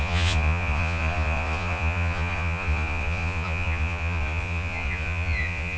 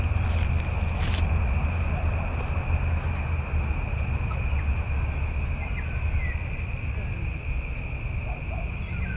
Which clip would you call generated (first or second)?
first